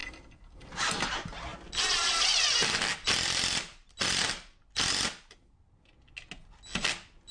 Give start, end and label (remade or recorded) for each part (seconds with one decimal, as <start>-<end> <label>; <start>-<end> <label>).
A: 0.0-7.3 recorded